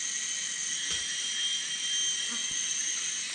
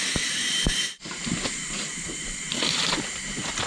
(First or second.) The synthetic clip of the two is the second